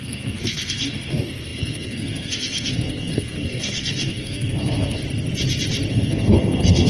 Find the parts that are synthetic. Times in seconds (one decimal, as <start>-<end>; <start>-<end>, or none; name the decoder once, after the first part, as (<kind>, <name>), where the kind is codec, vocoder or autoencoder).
0.0-5.0 (codec, SNAC); 5.9-6.9